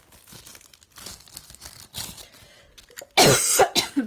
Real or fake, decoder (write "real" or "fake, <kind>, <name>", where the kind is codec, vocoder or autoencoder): real